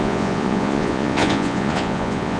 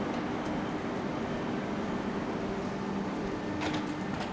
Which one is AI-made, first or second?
first